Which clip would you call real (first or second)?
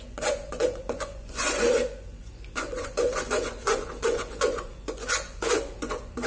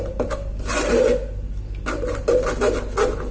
second